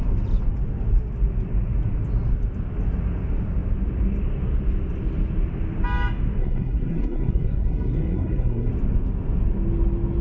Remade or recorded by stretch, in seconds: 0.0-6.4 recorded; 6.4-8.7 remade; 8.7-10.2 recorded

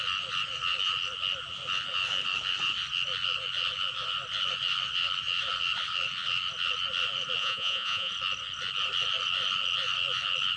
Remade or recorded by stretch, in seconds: 0.0-7.4 recorded; 7.4-8.1 remade; 8.1-10.6 recorded

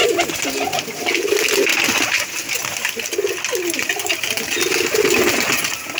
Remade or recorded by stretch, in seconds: 0.0-6.0 recorded

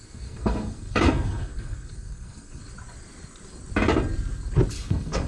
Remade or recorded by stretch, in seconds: 0.0-2.6 remade; 2.6-4.7 recorded; 4.7-5.3 remade

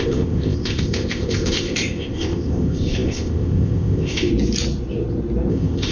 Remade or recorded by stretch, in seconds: 0.0-4.3 remade; 4.3-5.5 recorded; 5.5-5.9 remade